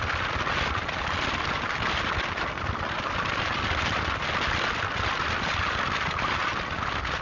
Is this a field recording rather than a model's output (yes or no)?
yes